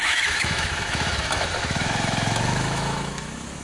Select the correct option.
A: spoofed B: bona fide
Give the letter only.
A